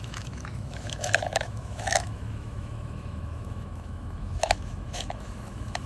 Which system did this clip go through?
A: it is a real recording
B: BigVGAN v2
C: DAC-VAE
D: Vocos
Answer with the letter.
C